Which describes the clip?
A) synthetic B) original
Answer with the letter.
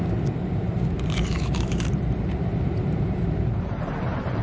A